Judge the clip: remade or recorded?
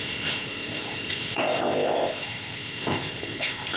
remade